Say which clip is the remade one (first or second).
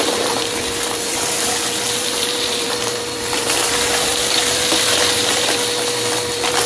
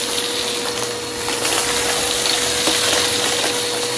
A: first